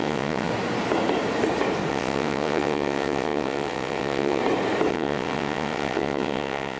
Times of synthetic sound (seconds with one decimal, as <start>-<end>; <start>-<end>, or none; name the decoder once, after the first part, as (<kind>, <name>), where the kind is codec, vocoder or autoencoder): 0.0-0.5 (vocoder, WaveNeXt); 1.9-4.4; 4.9-6.8